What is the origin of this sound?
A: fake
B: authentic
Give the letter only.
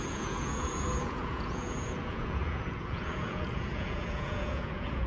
A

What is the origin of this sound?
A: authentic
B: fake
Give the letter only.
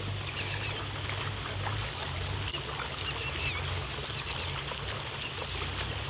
A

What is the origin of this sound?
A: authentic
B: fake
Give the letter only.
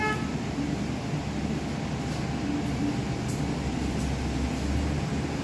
A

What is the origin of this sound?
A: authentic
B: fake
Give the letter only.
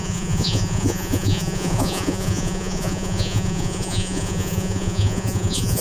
B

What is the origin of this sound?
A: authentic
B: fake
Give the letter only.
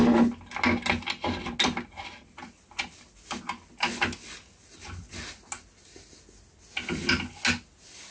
A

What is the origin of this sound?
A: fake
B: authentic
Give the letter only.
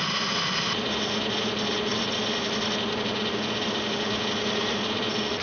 B